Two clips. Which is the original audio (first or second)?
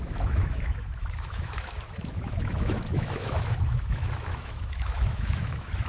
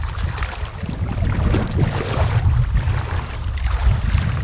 second